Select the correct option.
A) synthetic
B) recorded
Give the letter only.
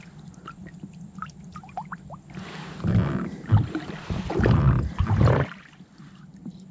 A